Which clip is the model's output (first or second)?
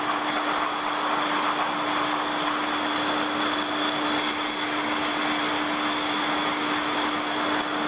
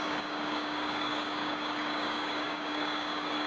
second